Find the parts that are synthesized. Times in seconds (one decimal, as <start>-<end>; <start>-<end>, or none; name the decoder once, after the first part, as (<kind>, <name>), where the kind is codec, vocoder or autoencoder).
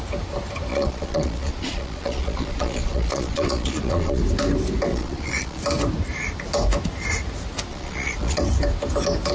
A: 0.7-4.2 (vocoder, Vocos); 4.9-5.6; 7.7-8.4